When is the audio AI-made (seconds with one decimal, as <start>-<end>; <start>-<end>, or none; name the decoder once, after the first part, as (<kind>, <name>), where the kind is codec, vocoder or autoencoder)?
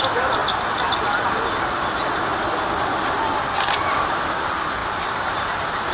none